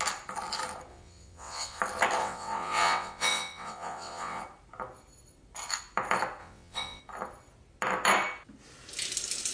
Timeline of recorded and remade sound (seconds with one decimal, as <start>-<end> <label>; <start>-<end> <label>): 0.0-0.9 recorded; 0.9-1.8 remade; 1.8-2.2 recorded; 2.2-4.4 remade; 4.4-6.4 recorded; 6.4-7.0 remade; 7.0-9.5 recorded